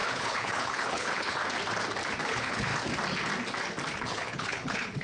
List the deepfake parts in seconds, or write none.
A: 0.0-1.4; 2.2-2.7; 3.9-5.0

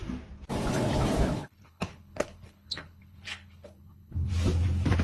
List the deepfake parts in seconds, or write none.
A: 1.3-4.3

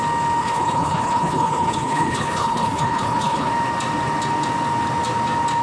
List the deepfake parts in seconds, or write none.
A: 0.4-3.5

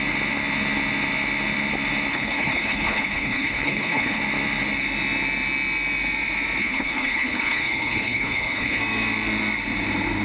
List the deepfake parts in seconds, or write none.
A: 2.1-4.2; 6.6-8.8

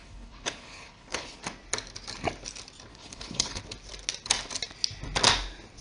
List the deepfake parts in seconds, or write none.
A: 0.0-1.4; 2.9-3.6

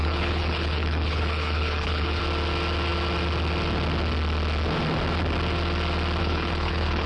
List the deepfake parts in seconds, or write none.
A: 0.0-2.2; 6.2-7.1

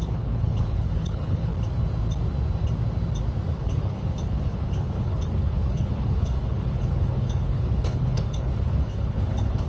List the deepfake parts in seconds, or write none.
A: 0.0-1.5; 3.6-9.7